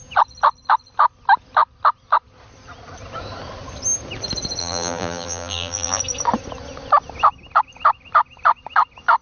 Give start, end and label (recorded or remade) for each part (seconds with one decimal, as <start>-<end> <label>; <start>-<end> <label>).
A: 0.0-4.6 recorded; 4.6-6.0 remade; 6.0-9.2 recorded